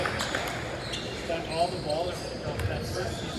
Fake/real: real